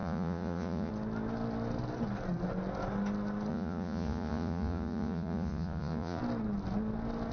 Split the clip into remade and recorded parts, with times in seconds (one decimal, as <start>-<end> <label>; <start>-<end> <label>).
0.0-0.9 remade; 0.9-3.5 recorded; 3.5-6.2 remade; 6.2-7.3 recorded